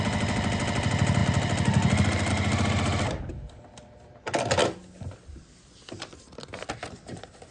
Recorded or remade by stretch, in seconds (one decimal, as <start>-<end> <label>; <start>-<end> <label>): 0.0-7.5 recorded